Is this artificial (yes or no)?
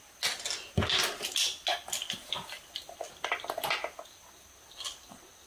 no